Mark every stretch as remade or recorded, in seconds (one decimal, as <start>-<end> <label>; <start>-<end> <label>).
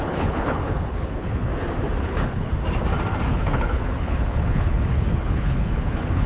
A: 0.0-1.5 remade; 1.5-2.0 recorded; 2.0-2.5 remade; 2.5-3.3 recorded; 3.3-6.3 remade